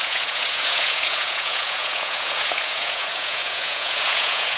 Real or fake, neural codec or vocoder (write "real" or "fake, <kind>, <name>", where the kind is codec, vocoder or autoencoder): fake, vocoder, Vocos